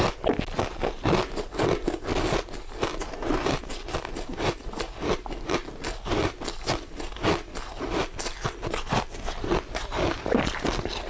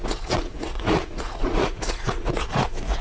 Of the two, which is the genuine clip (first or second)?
first